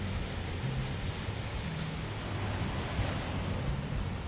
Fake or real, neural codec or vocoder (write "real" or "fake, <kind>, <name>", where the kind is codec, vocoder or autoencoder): real